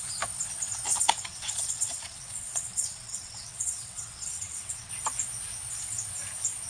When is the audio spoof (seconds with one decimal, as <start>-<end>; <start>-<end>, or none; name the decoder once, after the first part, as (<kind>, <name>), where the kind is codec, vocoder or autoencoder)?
0.9-4.9 (vocoder, WaveNeXt)